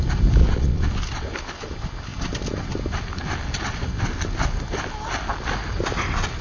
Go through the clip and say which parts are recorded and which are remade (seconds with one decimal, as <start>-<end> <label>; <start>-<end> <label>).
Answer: 0.0-0.4 recorded; 0.4-0.9 remade; 0.9-6.4 recorded